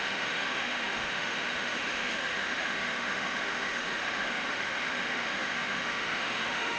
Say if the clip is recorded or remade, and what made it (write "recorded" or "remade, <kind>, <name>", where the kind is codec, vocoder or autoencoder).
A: remade, autoencoder, DAC-VAE